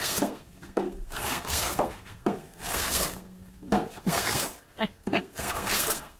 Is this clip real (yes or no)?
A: no